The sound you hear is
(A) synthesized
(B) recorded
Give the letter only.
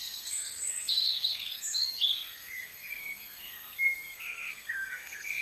A